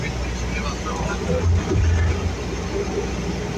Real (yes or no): yes